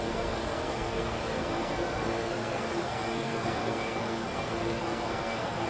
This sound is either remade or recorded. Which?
remade